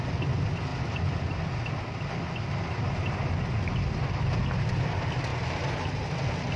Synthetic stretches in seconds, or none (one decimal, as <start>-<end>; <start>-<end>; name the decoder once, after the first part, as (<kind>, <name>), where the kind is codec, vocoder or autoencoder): none